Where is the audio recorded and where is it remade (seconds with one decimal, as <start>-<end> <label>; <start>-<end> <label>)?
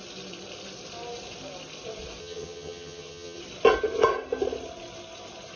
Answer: 0.0-2.2 recorded; 2.2-3.4 remade; 3.4-5.6 recorded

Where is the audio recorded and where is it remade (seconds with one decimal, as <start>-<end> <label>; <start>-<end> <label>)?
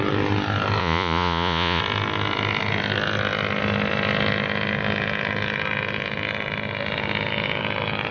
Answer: 0.0-0.8 recorded; 0.8-1.8 remade; 1.8-8.1 recorded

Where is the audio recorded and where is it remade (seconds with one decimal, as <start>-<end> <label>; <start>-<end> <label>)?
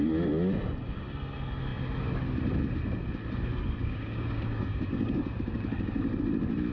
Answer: 0.0-3.8 recorded; 3.8-5.2 remade; 5.2-6.7 recorded